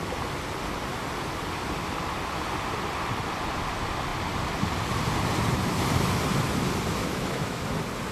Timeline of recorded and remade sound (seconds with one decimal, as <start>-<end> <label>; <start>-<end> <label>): 0.0-7.0 recorded; 7.0-7.6 remade; 7.6-8.1 recorded

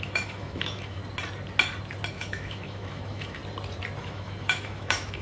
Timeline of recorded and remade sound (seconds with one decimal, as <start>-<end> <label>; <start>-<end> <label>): 0.0-1.0 remade; 1.0-2.1 recorded; 2.1-3.4 remade; 3.4-4.0 recorded; 4.0-5.2 remade

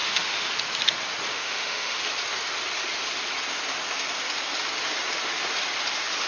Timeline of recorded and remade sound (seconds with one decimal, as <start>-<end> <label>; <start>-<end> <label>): 0.0-0.5 remade; 0.5-1.3 recorded; 1.3-2.0 remade; 2.0-6.3 recorded

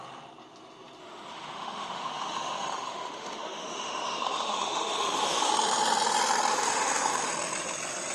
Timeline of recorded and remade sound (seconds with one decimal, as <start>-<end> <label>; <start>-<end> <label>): 0.0-1.0 recorded; 1.0-5.5 remade; 5.5-6.5 recorded; 6.5-7.3 remade; 7.3-8.1 recorded